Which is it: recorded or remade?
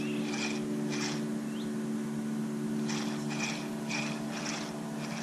recorded